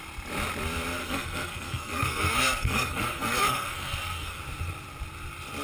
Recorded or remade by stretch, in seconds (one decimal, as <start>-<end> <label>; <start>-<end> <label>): 0.0-1.0 recorded; 1.0-4.4 remade; 4.4-5.6 recorded